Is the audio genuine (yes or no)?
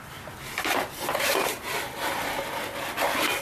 yes